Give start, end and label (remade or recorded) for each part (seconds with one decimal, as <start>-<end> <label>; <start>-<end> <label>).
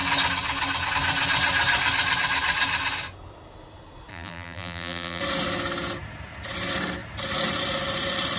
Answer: 0.0-4.1 recorded; 4.1-5.2 remade; 5.2-8.4 recorded